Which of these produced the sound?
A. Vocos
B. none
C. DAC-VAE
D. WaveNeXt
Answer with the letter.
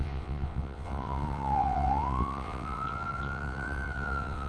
D